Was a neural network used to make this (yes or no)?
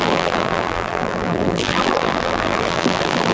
yes